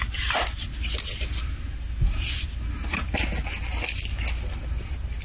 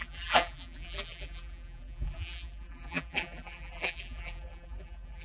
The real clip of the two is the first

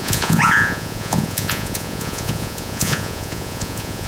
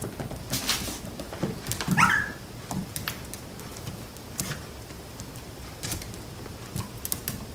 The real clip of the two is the second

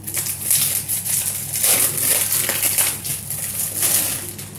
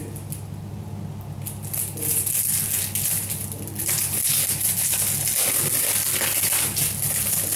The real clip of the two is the second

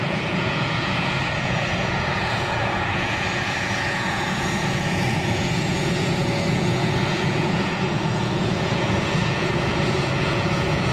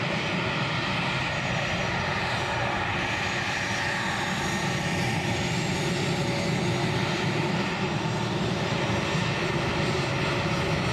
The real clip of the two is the second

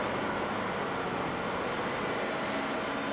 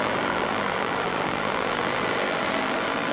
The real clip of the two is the first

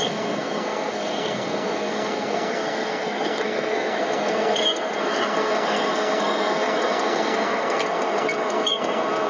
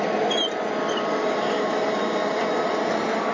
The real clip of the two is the second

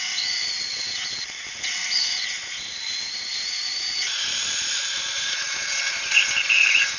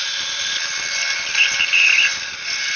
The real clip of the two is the second